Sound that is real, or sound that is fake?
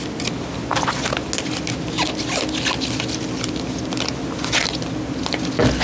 real